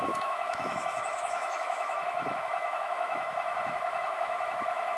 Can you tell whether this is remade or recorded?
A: remade